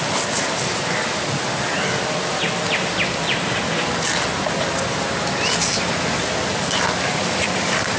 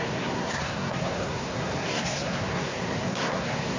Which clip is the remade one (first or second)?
second